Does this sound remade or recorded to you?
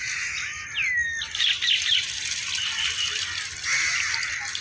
recorded